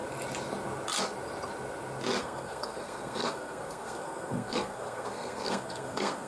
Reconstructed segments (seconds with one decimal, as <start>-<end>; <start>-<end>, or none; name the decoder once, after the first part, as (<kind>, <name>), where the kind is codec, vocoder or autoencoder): 2.2-6.3 (codec, SNAC)